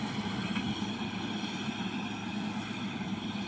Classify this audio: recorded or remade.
recorded